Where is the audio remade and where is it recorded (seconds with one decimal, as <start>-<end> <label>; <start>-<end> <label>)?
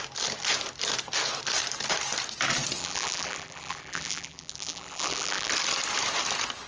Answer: 0.0-2.8 recorded; 2.8-5.5 remade; 5.5-6.7 recorded